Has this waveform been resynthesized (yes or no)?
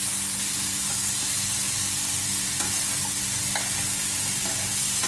no